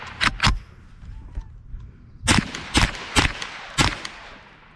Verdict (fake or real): real